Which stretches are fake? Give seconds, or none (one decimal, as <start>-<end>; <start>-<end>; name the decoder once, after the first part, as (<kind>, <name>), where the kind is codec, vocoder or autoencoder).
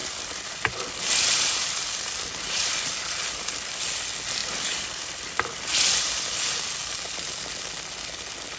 0.0-2.9 (vocoder, BigVGAN v2); 4.4-6.0